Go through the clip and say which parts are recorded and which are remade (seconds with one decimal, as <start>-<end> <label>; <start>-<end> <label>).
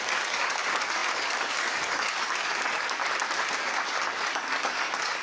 0.0-3.0 remade; 3.0-3.6 recorded; 3.6-5.2 remade